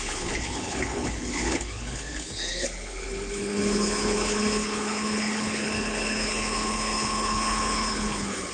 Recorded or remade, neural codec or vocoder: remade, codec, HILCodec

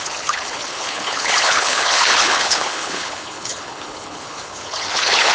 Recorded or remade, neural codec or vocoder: remade, codec, HILCodec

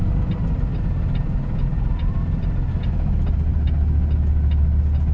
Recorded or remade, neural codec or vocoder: recorded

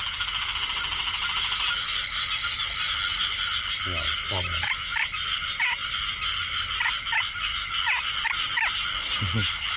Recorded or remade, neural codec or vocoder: recorded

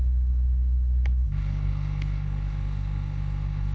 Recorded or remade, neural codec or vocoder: remade, codec, HILCodec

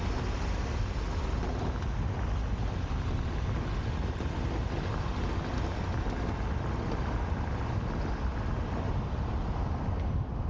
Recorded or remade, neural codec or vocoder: recorded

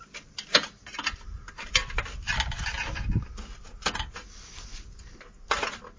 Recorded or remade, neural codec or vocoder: recorded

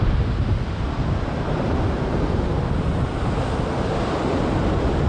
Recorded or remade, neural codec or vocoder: recorded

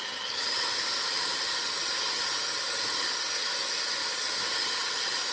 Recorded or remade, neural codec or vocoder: recorded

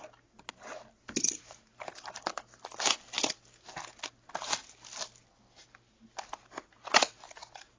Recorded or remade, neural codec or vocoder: recorded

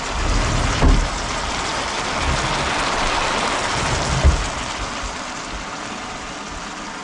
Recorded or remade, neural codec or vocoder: recorded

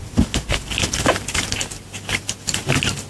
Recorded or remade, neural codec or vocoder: recorded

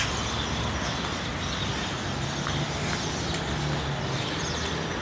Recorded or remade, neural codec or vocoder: recorded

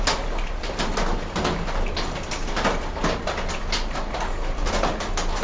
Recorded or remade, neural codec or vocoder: recorded